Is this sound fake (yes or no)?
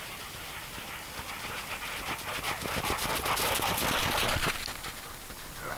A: no